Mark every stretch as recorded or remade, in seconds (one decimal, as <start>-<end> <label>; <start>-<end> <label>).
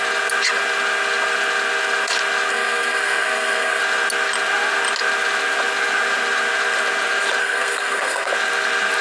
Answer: 0.0-2.5 recorded; 2.5-3.8 remade; 3.8-7.4 recorded; 7.4-8.3 remade; 8.3-9.0 recorded